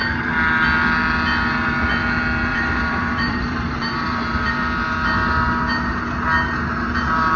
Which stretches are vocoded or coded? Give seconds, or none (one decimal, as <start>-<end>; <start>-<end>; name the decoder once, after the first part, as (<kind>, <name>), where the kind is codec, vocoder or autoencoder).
2.5-4.5 (vocoder, BigVGAN v2)